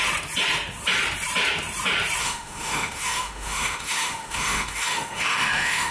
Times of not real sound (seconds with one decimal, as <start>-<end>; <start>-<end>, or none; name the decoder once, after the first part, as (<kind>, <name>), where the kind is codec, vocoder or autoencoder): 2.2-5.9 (autoencoder, DAC-VAE)